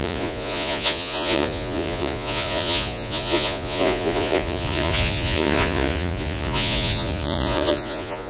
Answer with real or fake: fake